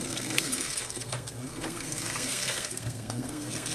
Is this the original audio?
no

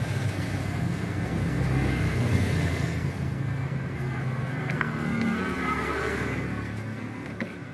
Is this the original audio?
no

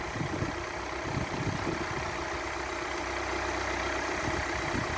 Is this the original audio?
yes